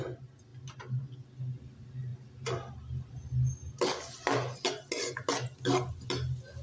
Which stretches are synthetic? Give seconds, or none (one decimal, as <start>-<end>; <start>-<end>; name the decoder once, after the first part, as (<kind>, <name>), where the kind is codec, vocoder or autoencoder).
none